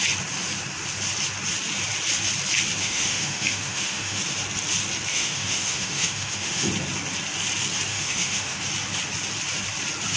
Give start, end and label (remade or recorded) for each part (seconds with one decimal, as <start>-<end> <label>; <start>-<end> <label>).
0.0-2.8 recorded; 2.8-4.2 remade; 4.2-5.1 recorded; 5.1-6.7 remade; 6.7-7.9 recorded; 7.9-8.6 remade; 8.6-10.2 recorded